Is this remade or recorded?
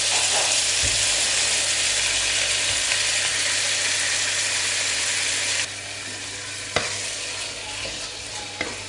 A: recorded